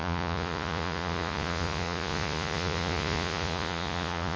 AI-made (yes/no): yes